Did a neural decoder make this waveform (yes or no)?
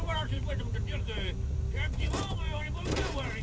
yes